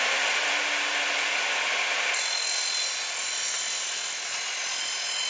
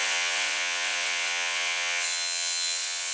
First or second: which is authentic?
first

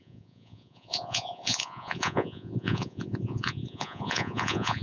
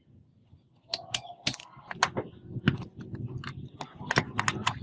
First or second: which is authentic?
second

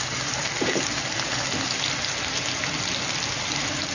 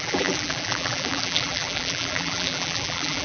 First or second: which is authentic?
first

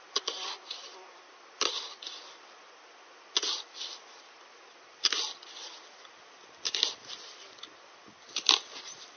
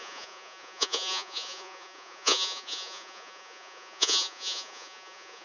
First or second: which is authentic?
first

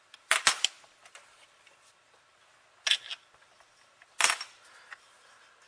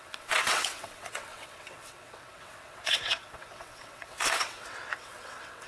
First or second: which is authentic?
first